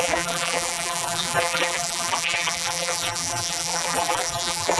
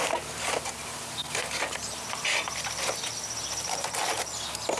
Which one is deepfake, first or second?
first